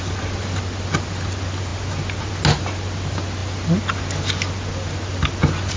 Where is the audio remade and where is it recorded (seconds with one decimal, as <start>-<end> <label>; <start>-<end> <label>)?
0.0-5.8 recorded